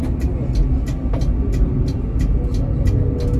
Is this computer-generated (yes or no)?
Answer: no